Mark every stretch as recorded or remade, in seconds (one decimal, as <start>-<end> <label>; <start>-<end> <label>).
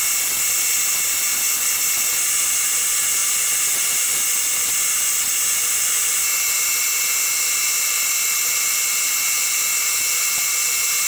0.0-11.1 recorded